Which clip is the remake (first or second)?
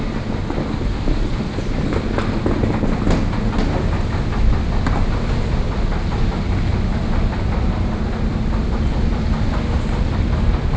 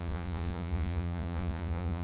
second